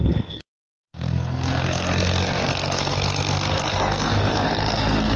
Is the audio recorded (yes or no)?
no